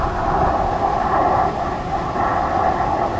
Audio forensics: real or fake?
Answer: real